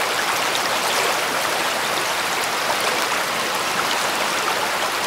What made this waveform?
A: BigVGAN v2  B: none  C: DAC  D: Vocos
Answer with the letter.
B